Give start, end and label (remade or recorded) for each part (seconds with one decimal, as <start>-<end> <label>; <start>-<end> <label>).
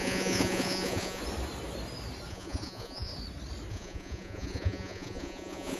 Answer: 0.0-1.2 remade; 1.2-2.3 recorded; 2.3-3.1 remade; 3.1-3.7 recorded; 3.7-5.8 remade